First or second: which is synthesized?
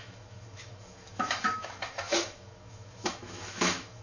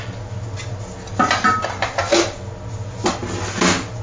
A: first